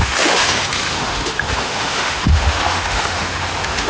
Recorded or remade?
remade